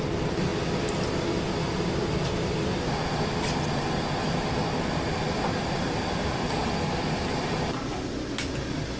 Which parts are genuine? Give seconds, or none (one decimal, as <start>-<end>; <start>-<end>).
0.5-5.4; 6.6-7.4; 7.9-9.0